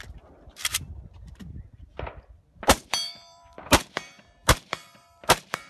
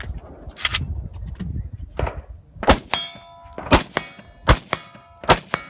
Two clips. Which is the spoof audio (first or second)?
first